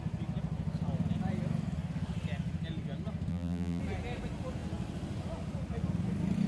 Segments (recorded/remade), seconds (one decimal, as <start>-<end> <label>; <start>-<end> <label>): 0.0-3.3 recorded; 3.3-3.8 remade; 3.8-6.5 recorded